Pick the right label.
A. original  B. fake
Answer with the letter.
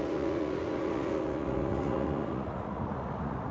B